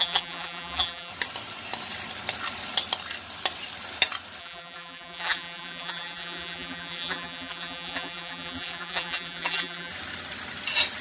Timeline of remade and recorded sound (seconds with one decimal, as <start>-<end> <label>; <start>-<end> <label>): 0.0-1.1 remade; 1.1-4.4 recorded; 4.4-9.9 remade; 9.9-11.0 recorded